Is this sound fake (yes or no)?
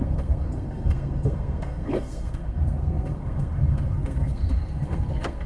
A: yes